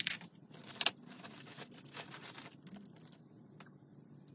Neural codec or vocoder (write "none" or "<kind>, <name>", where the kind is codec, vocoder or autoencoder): none